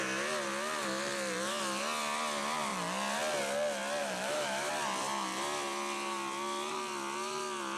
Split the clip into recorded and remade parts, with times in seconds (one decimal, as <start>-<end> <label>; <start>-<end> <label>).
0.0-4.0 recorded; 4.0-4.7 remade; 4.7-7.8 recorded